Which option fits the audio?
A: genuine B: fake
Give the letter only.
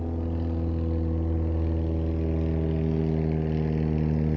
A